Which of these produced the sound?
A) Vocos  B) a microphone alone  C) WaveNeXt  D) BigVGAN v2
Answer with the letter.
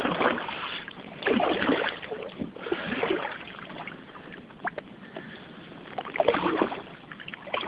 B